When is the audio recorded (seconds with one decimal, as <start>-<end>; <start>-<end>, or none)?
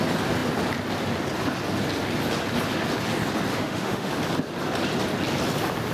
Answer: 0.0-3.5; 4.1-5.9